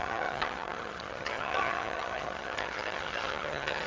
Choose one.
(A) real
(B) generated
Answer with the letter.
B